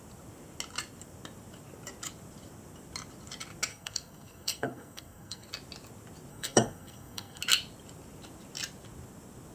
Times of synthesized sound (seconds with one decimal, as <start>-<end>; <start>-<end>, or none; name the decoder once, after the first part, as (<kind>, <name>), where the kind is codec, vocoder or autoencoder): 3.7-5.5 (codec, SNAC); 6.3-7.4